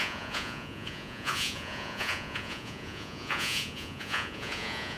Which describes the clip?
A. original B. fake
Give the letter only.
B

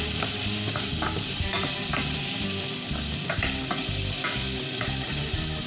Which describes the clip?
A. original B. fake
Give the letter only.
B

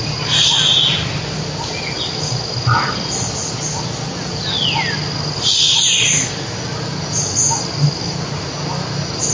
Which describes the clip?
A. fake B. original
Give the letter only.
B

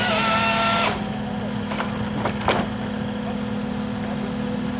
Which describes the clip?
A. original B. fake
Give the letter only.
A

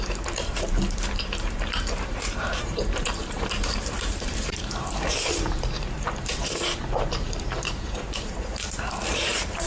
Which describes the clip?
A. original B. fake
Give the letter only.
B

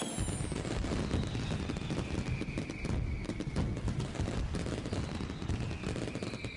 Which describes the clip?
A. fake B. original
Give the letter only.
B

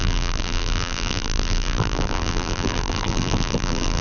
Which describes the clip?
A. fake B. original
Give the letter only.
A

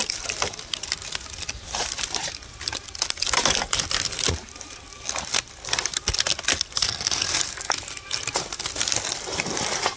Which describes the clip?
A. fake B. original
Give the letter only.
B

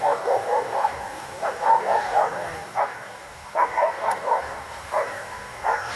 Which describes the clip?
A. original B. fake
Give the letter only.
B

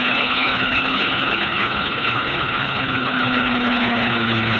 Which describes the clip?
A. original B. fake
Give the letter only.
B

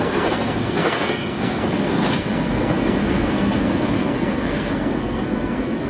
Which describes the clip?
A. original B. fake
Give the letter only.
B